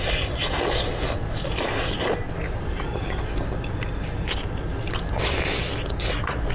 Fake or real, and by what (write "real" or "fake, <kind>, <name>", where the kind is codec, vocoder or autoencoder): real